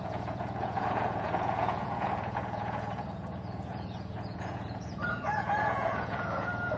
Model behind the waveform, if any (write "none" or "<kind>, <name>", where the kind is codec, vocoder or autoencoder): vocoder, Vocos